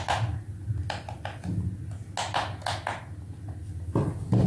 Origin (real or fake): real